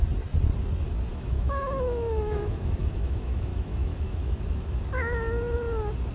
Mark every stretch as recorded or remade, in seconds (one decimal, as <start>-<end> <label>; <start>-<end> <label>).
0.0-1.1 recorded; 1.1-4.8 remade; 4.8-6.1 recorded